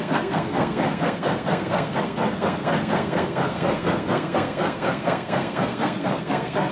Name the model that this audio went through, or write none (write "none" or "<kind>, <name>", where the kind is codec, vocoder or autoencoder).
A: codec, SNAC